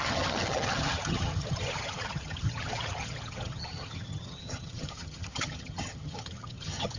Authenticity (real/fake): fake